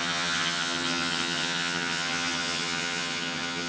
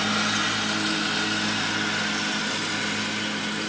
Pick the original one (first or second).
second